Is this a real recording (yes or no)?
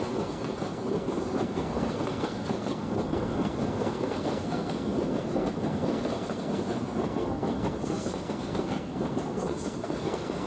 no